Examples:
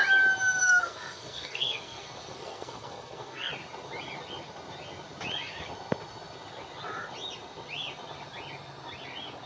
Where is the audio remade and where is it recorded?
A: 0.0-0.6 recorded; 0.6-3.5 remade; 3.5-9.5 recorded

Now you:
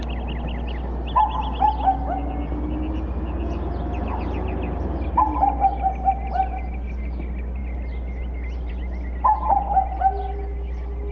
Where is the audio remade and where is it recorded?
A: 0.0-11.1 recorded

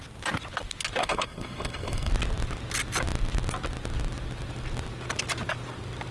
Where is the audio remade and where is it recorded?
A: 0.0-1.0 recorded; 1.0-2.1 remade; 2.1-6.1 recorded

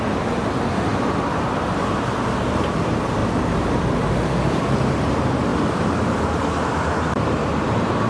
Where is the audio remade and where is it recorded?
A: 0.0-3.2 remade; 3.2-4.2 recorded; 4.2-5.5 remade; 5.5-7.1 recorded; 7.1-8.1 remade

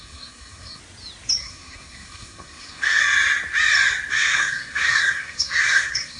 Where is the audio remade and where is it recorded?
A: 0.0-0.8 remade; 0.8-1.4 recorded; 1.4-3.0 remade; 3.0-4.1 recorded; 4.1-6.2 remade